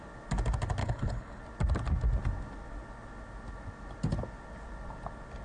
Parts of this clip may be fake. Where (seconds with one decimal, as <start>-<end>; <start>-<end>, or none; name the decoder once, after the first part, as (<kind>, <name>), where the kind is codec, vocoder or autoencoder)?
0.8-1.4 (codec, HILCodec)